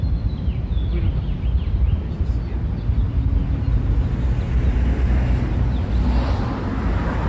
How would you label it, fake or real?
real